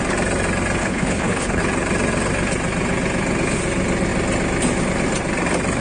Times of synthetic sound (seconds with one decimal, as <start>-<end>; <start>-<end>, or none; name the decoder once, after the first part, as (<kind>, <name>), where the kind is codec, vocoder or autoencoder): 0.8-1.6 (codec, HILCodec)